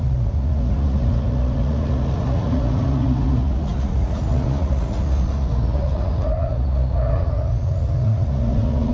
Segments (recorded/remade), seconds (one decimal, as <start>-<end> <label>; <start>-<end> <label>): 0.0-8.9 remade